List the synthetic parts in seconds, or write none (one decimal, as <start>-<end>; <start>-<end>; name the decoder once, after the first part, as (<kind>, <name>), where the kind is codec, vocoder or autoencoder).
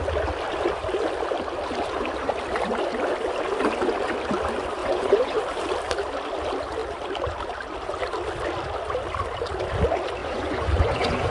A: 4.8-5.4 (vocoder, Vocos); 10.2-11.3